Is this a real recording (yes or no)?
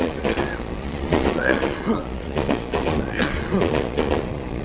no